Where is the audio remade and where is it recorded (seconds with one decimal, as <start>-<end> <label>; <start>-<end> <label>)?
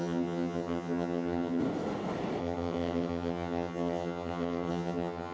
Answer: 0.0-1.6 remade; 1.6-2.4 recorded; 2.4-5.3 remade